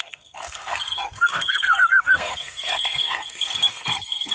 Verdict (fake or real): fake